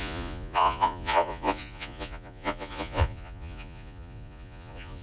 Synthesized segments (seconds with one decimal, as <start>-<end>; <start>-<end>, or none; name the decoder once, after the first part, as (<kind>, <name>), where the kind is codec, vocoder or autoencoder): 0.0-5.0 (vocoder, Vocos)